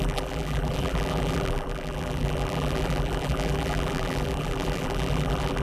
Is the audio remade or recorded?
remade